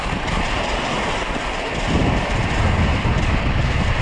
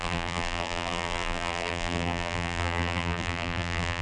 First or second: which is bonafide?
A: first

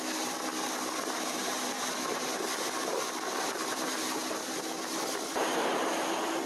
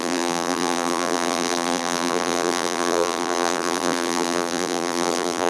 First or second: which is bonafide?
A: first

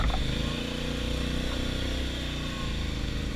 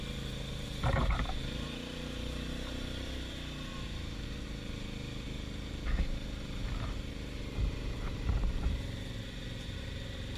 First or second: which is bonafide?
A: first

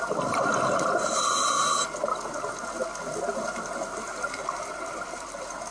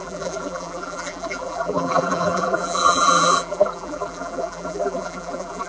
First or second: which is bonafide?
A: first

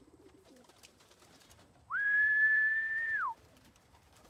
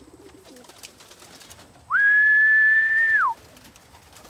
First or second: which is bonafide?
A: second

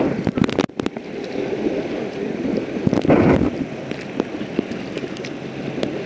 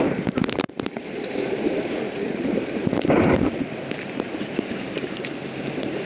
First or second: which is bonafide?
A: first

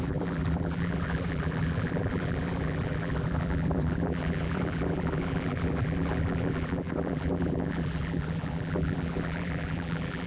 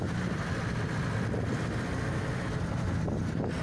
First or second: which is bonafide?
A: second